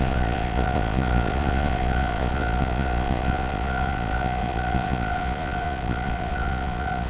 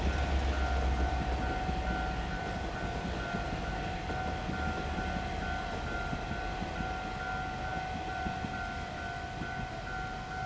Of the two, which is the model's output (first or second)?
first